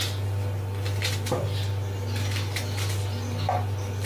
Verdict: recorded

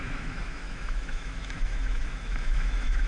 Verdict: remade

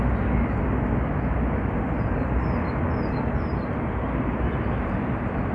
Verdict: recorded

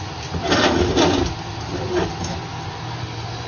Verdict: recorded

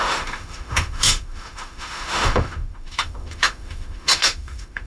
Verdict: remade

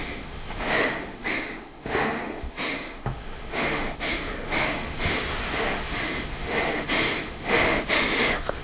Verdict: remade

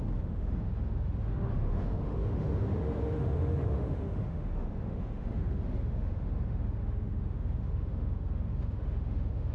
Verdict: remade